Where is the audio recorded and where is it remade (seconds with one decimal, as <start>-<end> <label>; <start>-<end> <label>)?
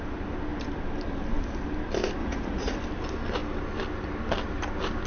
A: 0.0-2.2 recorded; 2.2-2.8 remade; 2.8-5.1 recorded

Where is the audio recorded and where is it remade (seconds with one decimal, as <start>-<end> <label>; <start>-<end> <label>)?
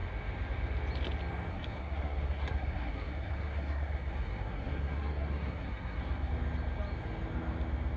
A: 0.0-1.5 recorded; 1.5-6.3 remade; 6.3-8.0 recorded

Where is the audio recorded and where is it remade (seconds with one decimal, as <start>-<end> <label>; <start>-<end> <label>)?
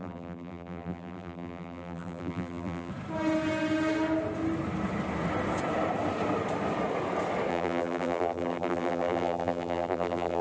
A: 0.0-2.9 remade; 2.9-7.5 recorded; 7.5-10.4 remade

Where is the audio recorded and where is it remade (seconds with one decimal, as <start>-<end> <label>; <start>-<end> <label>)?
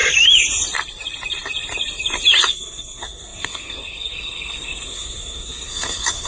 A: 0.0-2.5 recorded; 2.5-6.3 remade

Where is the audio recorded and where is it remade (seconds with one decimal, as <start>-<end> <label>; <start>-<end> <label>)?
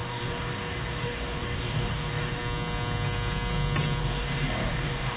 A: 0.0-2.4 remade; 2.4-4.0 recorded; 4.0-5.2 remade